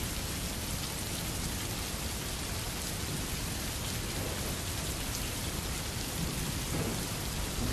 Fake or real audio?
real